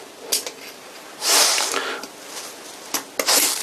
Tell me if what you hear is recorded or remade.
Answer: recorded